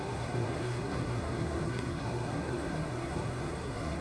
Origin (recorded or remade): remade